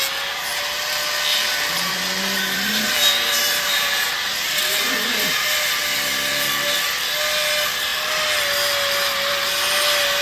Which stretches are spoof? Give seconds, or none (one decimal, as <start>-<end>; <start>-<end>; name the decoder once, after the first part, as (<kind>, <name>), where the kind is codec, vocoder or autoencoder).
1.3-5.6 (vocoder, BigVGAN v2)